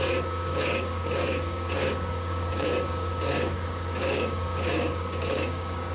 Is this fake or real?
fake